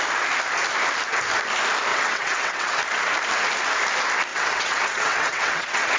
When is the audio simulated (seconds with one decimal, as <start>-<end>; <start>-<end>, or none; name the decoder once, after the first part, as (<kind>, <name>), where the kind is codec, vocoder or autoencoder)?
1.9-2.8 (vocoder, WaveNeXt); 4.3-6.0